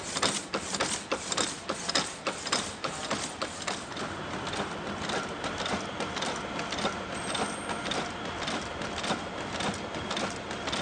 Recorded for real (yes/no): yes